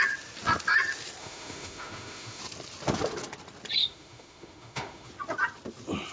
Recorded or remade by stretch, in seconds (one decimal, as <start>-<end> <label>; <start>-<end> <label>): 0.0-1.2 recorded; 1.2-2.4 remade; 2.4-3.8 recorded; 3.8-5.1 remade; 5.1-6.1 recorded